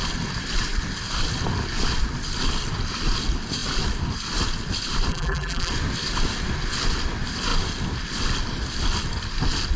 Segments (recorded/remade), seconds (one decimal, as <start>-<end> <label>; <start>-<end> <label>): 0.0-5.1 recorded; 5.1-5.7 remade; 5.7-9.8 recorded